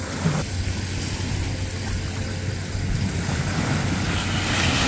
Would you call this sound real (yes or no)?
yes